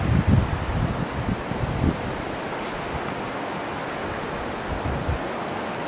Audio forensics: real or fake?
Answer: real